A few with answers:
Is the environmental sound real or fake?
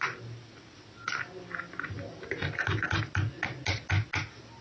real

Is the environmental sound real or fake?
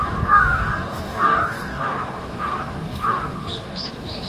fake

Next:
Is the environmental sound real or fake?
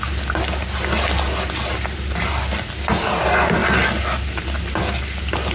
real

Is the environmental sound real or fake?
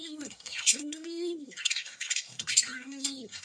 fake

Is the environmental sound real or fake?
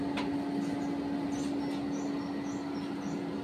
real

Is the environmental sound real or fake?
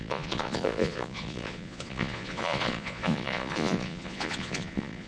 fake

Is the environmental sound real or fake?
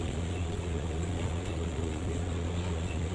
fake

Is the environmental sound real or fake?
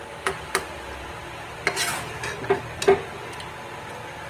real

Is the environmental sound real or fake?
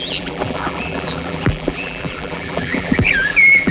fake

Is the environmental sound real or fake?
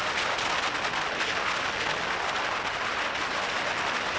real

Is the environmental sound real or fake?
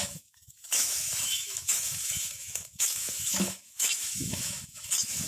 fake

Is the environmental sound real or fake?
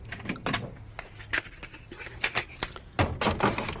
real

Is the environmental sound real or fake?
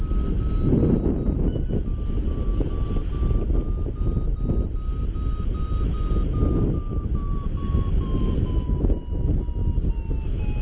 real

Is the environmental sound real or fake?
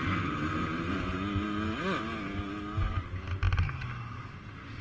real